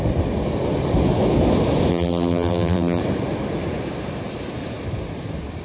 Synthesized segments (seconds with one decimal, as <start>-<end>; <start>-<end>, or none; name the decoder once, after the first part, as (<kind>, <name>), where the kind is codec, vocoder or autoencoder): 1.9-3.0 (vocoder, BigVGAN v2)